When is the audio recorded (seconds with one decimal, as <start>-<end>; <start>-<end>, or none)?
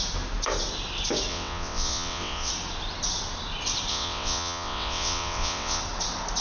0.0-1.3; 2.5-3.9; 5.8-6.4